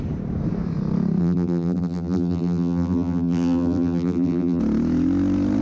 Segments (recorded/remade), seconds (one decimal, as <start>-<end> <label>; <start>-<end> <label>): 0.0-1.2 recorded; 1.2-4.6 remade; 4.6-5.6 recorded